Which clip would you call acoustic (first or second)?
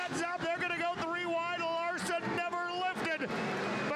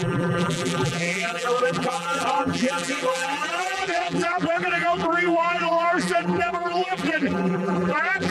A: first